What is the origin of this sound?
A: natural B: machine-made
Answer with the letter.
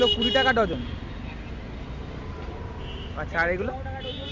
A